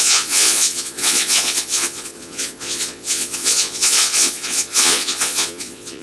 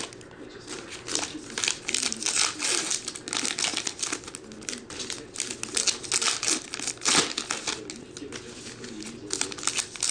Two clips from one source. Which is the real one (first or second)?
second